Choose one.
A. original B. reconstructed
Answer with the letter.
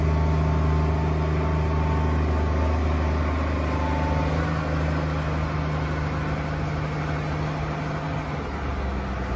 A